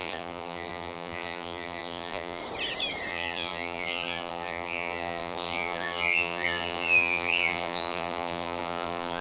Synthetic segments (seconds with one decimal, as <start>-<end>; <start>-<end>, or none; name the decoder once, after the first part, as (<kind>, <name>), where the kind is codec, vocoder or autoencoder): 0.0-2.4 (vocoder, BigVGAN v2); 3.1-9.2